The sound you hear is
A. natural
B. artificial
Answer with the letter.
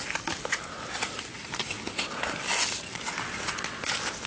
A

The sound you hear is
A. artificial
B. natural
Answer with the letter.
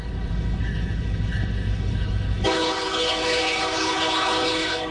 A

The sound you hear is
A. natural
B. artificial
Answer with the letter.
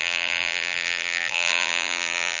B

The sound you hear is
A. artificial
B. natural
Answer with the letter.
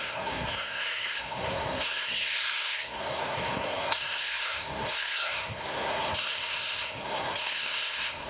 A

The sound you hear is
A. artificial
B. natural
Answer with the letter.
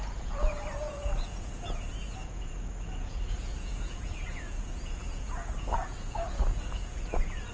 A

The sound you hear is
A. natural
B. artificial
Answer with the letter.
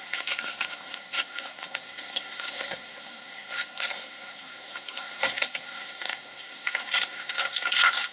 B